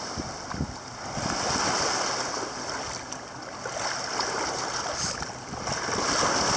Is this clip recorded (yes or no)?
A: yes